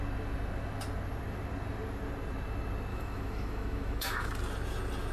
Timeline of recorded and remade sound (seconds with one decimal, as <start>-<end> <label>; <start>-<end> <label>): 0.0-2.9 recorded; 2.9-4.3 remade; 4.3-5.1 recorded